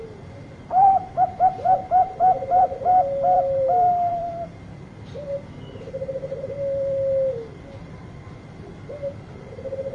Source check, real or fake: fake